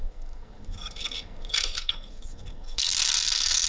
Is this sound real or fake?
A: fake